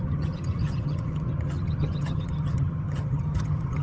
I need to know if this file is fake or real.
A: fake